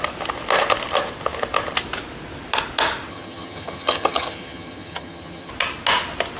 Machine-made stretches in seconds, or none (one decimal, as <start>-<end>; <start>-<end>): 3.1-5.5